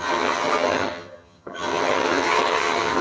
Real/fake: fake